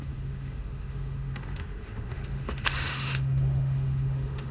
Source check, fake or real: fake